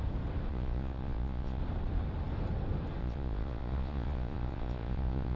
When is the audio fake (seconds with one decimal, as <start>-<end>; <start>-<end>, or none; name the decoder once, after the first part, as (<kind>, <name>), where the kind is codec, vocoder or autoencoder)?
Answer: 0.5-1.6 (vocoder, Vocos); 3.0-5.4